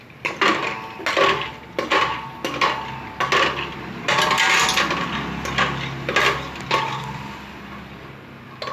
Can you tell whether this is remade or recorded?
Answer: recorded